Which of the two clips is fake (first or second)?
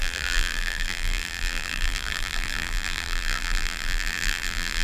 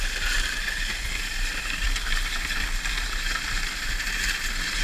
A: first